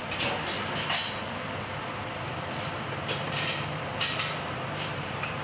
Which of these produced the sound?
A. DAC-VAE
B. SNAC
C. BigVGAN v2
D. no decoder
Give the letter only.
C